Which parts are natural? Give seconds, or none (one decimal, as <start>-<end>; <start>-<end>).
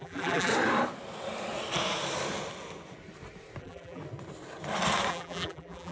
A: 0.5-3.6; 4.0-5.1